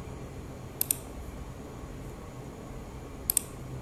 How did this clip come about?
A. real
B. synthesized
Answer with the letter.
A